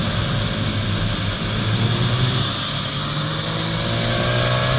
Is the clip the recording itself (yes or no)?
yes